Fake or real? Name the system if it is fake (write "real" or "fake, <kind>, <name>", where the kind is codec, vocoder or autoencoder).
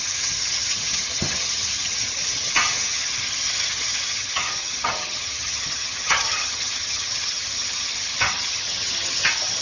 fake, vocoder, HiFi-GAN